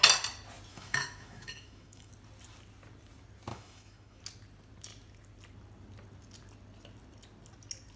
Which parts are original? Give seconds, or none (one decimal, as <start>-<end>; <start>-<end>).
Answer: 0.0-0.7; 2.1-3.5; 4.2-8.0